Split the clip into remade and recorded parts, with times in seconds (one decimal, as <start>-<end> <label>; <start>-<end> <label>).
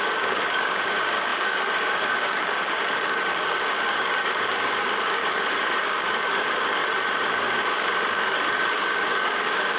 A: 0.0-5.2 remade; 5.2-5.8 recorded; 5.8-6.8 remade; 6.8-8.1 recorded; 8.1-9.8 remade